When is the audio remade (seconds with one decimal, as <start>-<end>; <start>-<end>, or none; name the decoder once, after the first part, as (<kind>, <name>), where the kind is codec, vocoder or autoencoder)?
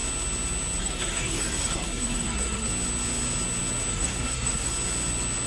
0.8-2.7 (codec, SNAC); 3.9-4.7